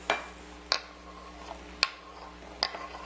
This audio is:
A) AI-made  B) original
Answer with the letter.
B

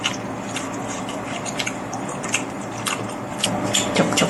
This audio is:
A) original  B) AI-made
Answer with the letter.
B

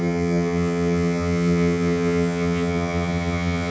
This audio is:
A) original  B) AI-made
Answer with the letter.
B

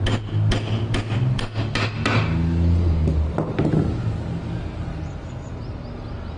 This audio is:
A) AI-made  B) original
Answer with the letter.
B